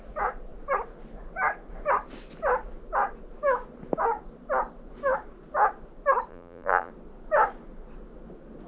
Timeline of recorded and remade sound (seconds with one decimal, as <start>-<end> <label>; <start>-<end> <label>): 0.0-6.3 recorded; 6.3-6.9 remade; 6.9-8.7 recorded